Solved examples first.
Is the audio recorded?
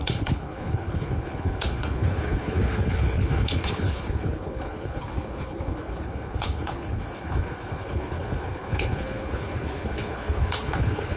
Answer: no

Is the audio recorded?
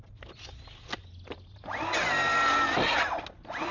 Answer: yes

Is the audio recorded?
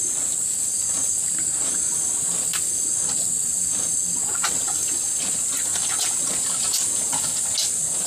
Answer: yes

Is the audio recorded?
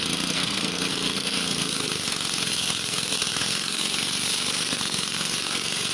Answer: no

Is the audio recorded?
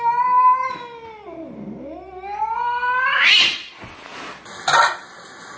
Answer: yes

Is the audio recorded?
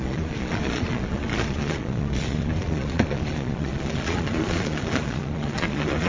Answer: no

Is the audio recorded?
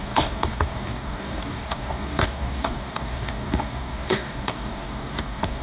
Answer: no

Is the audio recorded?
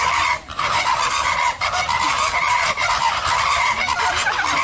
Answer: no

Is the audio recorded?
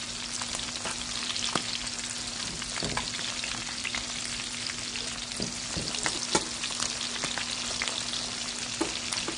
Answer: yes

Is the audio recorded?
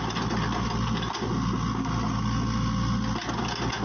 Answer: yes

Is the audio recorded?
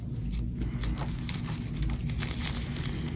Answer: yes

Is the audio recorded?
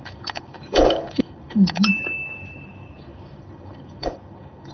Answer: no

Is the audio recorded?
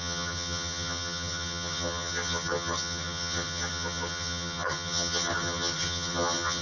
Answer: no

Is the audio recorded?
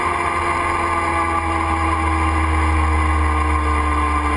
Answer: yes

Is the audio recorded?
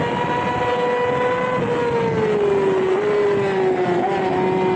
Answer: yes